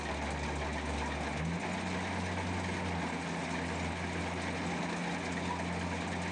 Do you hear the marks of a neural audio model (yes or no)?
no